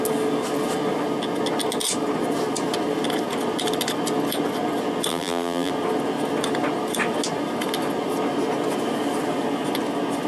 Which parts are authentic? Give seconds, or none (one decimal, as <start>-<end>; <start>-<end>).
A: 0.0-5.1; 5.7-10.3